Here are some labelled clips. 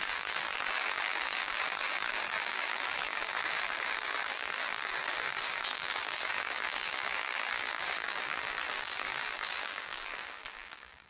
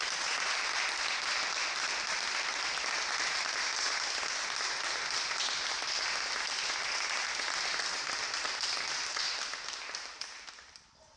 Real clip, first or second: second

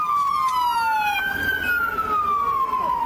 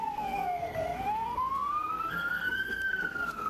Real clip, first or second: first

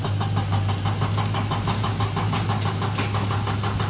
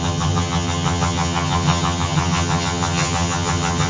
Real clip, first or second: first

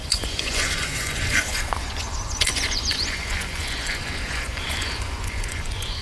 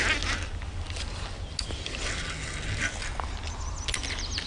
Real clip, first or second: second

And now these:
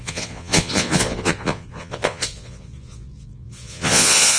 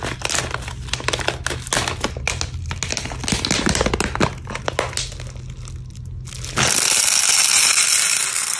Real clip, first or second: second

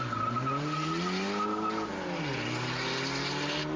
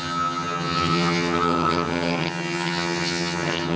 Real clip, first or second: first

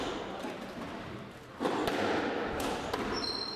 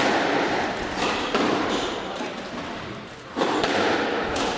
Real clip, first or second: first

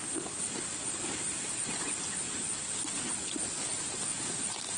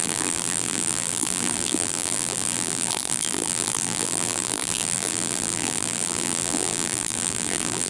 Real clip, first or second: first